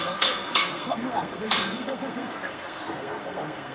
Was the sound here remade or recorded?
remade